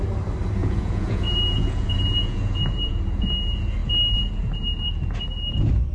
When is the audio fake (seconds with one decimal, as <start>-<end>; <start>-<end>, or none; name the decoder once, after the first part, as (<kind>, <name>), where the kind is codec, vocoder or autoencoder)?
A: 0.6-3.3 (vocoder, Vocos)